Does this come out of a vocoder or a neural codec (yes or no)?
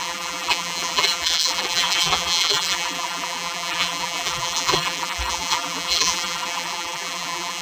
yes